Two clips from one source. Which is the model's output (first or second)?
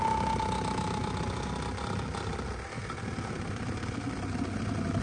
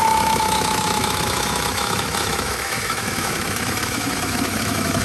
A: second